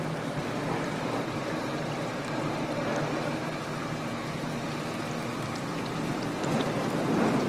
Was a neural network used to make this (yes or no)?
no